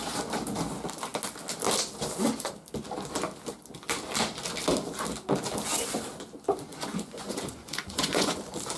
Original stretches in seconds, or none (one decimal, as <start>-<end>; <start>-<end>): 0.0-6.7; 8.4-8.8